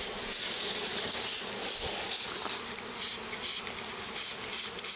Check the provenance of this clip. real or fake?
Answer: real